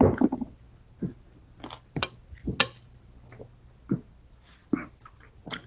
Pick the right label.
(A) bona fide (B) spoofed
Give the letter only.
A